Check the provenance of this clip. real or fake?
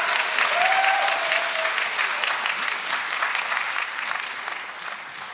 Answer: real